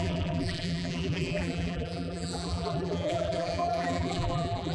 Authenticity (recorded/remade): remade